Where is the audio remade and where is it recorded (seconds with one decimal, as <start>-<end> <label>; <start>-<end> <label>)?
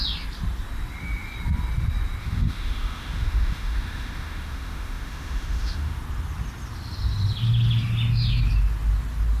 0.0-2.2 recorded; 2.2-6.0 remade; 6.0-9.4 recorded